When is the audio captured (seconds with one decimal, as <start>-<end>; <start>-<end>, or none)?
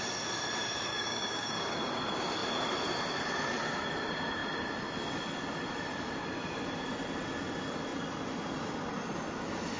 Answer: 0.0-0.9; 1.9-9.8